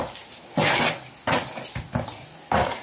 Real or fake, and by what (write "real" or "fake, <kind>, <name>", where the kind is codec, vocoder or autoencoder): real